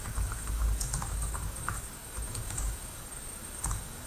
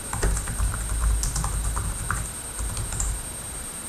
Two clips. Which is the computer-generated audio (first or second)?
first